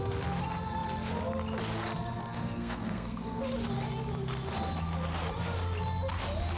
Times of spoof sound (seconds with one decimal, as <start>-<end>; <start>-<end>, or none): 2.2-3.4